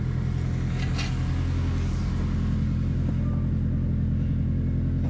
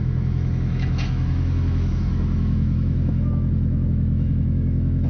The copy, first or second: second